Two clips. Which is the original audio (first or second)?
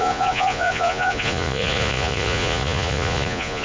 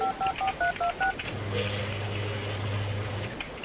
second